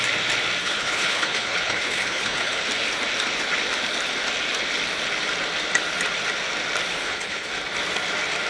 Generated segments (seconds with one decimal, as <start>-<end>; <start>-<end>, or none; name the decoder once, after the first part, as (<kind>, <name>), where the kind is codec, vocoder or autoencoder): 0.6-2.6 (codec, HILCodec); 6.9-7.5